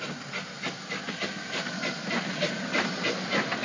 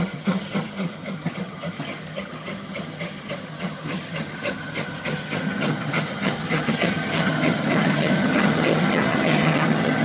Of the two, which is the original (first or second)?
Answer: first